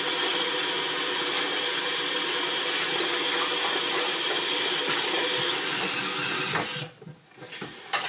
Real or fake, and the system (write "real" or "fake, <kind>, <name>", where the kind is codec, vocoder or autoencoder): real